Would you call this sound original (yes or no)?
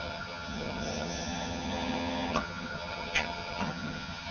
no